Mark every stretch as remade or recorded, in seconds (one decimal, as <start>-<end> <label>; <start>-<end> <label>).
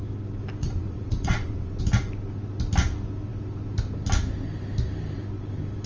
0.0-0.6 recorded; 0.6-1.8 remade; 1.8-5.9 recorded